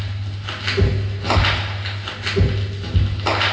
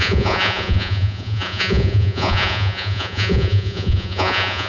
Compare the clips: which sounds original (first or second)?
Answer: first